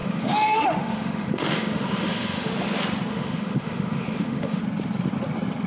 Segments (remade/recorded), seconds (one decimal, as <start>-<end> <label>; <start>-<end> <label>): 0.0-2.5 remade; 2.5-3.1 recorded; 3.1-4.6 remade; 4.6-5.7 recorded

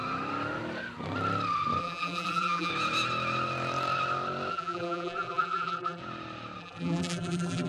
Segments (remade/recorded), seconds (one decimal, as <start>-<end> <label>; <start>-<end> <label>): 0.0-1.8 recorded; 1.8-2.7 remade; 2.7-4.5 recorded; 4.5-6.0 remade; 6.0-6.6 recorded; 6.6-7.7 remade

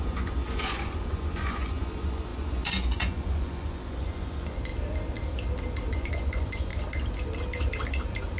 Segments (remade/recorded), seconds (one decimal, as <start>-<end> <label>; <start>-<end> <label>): 0.0-4.7 remade; 4.7-5.9 recorded; 5.9-6.7 remade; 6.7-8.4 recorded

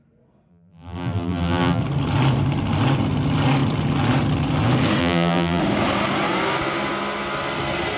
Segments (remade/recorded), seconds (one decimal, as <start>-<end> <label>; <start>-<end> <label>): 0.0-0.5 recorded; 0.5-1.8 remade; 1.8-5.0 recorded; 5.0-5.6 remade; 5.6-8.0 recorded

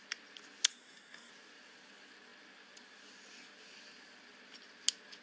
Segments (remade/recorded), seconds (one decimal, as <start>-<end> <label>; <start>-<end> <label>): 0.0-0.7 recorded; 0.7-1.3 remade; 1.3-5.2 recorded

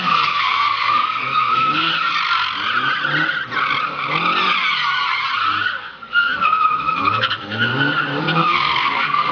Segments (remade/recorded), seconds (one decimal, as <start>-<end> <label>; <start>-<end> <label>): 0.0-1.9 remade; 1.9-5.8 recorded; 5.8-7.7 remade; 7.7-8.2 recorded; 8.2-9.3 remade

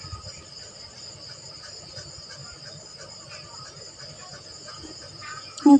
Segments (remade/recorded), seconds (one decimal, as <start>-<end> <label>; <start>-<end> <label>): 0.0-4.3 recorded; 4.3-5.8 remade